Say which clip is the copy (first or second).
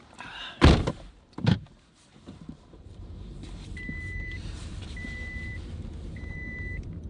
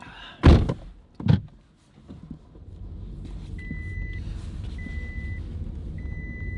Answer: first